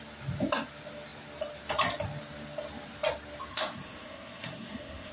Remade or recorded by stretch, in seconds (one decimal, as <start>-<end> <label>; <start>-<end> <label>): 0.0-3.5 recorded; 3.5-5.1 remade